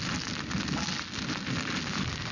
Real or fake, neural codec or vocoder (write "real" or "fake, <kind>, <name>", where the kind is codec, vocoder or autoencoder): real